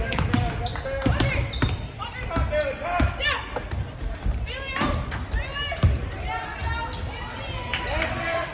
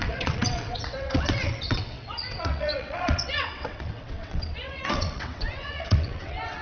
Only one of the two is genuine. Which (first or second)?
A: first